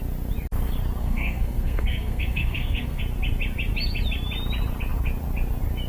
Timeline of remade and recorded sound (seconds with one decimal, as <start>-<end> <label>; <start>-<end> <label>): 0.0-1.0 recorded; 1.0-3.0 remade; 3.0-5.9 recorded